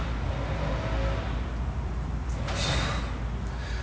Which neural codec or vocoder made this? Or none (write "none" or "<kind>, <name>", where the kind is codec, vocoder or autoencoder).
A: none